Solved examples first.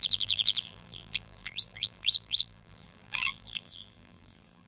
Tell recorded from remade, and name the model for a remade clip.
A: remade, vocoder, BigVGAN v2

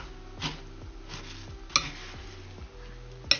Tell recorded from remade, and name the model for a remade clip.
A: recorded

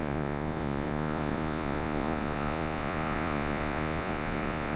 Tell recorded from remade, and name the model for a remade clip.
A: remade, vocoder, Vocos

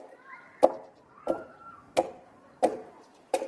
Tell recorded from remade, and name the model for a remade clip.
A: remade, vocoder, BigVGAN v2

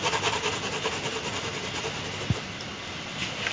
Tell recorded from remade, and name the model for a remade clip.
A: recorded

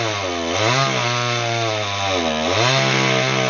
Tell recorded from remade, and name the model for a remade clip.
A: recorded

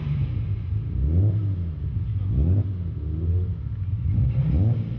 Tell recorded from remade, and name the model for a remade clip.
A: recorded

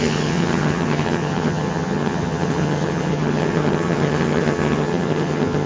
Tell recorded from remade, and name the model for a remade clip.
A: remade, vocoder, HiFi-GAN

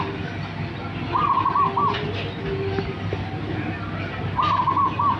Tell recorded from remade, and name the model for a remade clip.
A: recorded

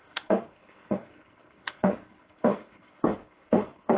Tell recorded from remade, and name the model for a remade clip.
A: remade, codec, SNAC